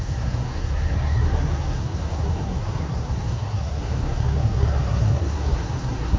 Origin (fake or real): fake